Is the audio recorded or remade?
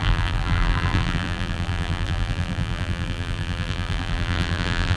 remade